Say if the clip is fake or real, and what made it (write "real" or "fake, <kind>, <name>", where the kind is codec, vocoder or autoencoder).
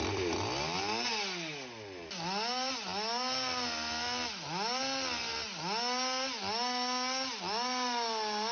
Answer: real